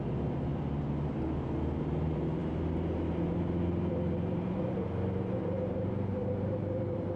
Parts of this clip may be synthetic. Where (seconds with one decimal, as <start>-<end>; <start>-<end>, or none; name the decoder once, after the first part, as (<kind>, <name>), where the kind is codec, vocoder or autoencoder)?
0.0-0.5 (vocoder, BigVGAN v2); 1.8-7.2